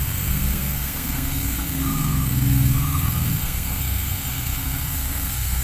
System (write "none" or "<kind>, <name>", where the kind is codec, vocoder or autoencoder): codec, SNAC